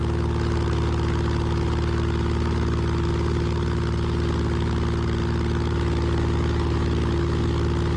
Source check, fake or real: real